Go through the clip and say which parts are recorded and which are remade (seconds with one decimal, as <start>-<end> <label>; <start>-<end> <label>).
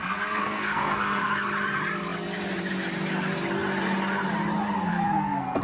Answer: 0.0-1.3 remade; 1.3-4.9 recorded; 4.9-5.6 remade